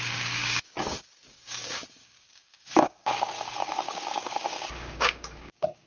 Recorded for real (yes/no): no